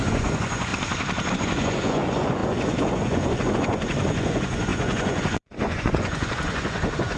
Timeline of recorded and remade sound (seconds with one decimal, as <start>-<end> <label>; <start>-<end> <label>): 0.0-0.7 remade; 0.7-1.3 recorded; 1.3-7.2 remade